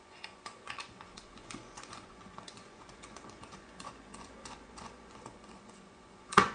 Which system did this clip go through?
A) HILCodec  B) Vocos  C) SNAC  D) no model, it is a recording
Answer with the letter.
B